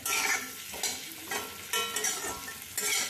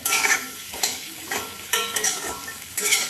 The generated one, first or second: second